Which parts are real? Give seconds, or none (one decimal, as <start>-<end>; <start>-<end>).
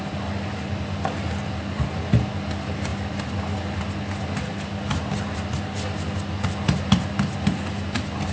0.0-8.3